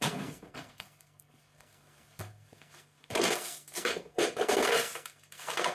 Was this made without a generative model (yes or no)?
no